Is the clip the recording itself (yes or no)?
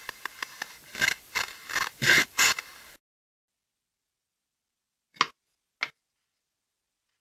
yes